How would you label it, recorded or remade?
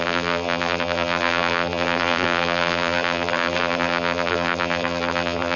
remade